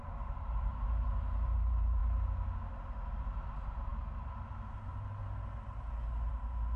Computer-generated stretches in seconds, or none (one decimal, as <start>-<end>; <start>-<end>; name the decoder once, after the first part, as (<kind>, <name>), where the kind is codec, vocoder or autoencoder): 0.0-2.0 (vocoder, BigVGAN v2); 3.2-3.9; 4.7-5.2; 6.3-6.8